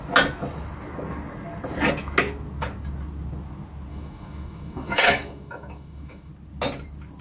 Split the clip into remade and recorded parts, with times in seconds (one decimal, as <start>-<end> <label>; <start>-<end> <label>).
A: 0.0-3.9 recorded; 3.9-6.3 remade; 6.3-7.2 recorded